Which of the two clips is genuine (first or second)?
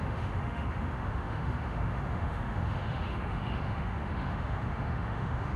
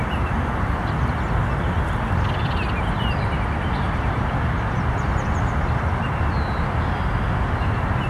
second